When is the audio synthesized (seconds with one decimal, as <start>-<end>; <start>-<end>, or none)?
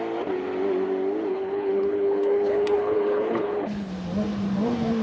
1.3-3.9